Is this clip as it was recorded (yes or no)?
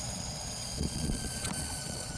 no